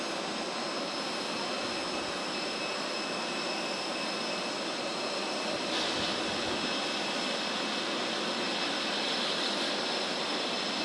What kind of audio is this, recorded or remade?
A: recorded